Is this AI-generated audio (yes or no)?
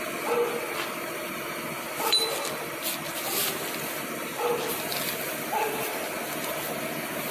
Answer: no